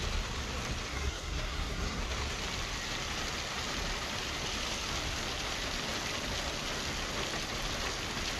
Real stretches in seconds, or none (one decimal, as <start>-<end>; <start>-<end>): 0.0-0.9; 2.0-8.4